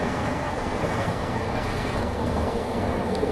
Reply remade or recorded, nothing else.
remade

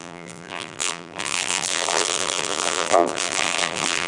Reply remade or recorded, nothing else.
remade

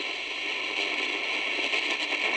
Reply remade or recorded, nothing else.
recorded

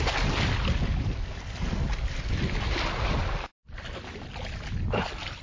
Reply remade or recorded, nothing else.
recorded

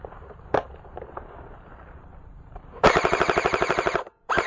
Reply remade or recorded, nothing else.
remade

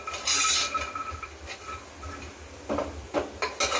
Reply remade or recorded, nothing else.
recorded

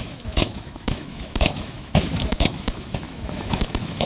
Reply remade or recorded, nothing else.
remade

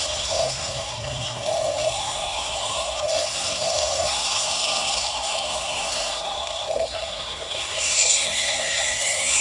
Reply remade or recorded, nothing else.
remade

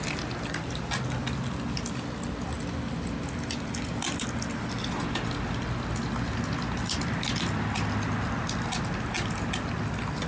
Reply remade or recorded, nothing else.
recorded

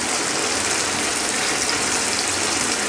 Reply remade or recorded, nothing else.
recorded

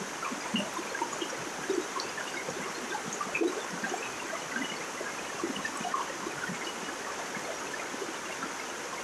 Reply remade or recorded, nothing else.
remade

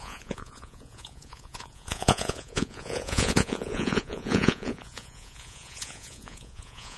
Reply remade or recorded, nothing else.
remade